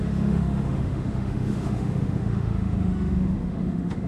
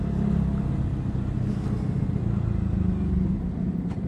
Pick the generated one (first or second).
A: first